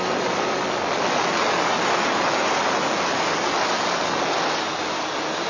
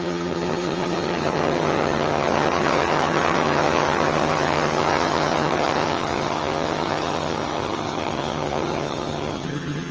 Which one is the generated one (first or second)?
second